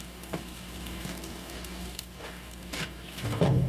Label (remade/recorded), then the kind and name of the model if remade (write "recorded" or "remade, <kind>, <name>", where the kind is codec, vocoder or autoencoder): remade, codec, DAC